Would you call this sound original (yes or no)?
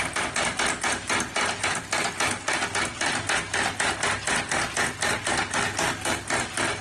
yes